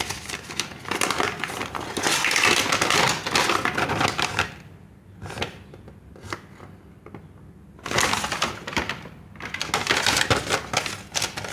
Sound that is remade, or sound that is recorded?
recorded